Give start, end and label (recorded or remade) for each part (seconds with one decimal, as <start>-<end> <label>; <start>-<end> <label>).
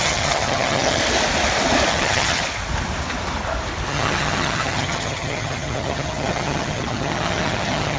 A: 0.0-1.0 remade; 1.0-1.9 recorded; 1.9-2.4 remade; 2.4-3.9 recorded; 3.9-8.0 remade